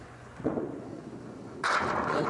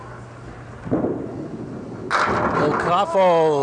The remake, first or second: first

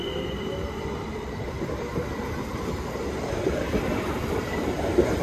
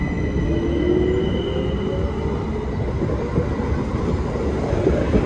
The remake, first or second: first